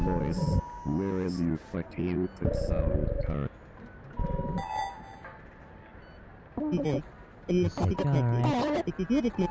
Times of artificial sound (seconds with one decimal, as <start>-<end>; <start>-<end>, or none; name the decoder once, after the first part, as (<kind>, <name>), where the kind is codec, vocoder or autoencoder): none